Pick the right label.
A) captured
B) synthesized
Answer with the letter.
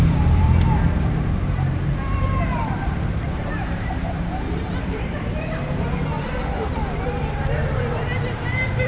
B